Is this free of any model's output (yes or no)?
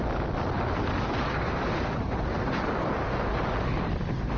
yes